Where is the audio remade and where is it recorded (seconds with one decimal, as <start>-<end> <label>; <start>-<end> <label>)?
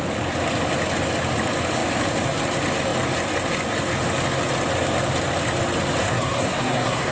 0.0-6.0 recorded; 6.0-7.1 remade